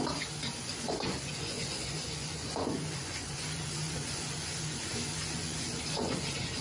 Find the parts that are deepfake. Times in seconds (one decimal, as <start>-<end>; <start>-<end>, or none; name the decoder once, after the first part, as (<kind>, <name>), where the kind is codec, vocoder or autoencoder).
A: 0.6-6.6 (vocoder, Vocos)